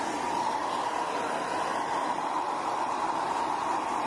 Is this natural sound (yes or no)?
no